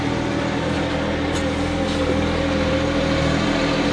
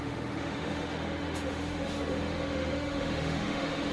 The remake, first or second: second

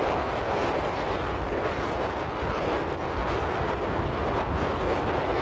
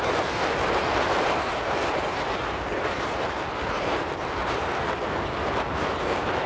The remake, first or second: second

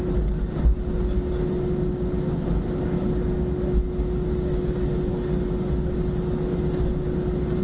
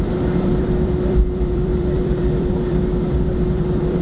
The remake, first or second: second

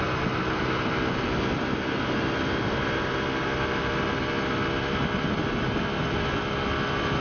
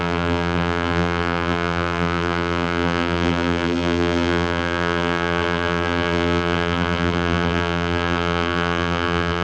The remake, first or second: second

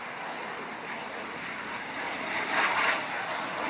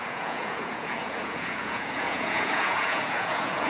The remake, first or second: second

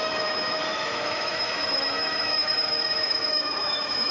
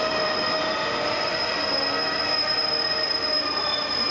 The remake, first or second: first